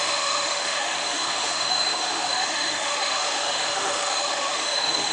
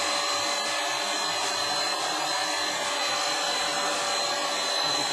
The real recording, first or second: second